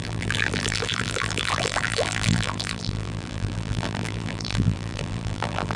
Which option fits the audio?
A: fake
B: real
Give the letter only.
A